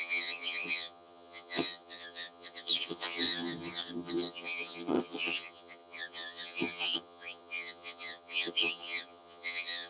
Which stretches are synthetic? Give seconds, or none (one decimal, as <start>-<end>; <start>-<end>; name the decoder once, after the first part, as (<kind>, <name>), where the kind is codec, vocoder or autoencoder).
0.0-9.9 (vocoder, HiFi-GAN)